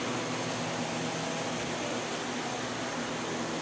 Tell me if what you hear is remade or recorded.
recorded